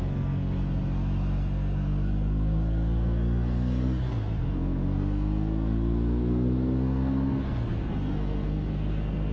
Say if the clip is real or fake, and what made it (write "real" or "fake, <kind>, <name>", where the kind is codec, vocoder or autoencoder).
fake, codec, SNAC